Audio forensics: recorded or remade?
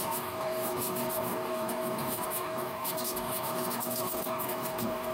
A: remade